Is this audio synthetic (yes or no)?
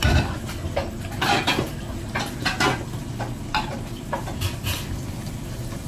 no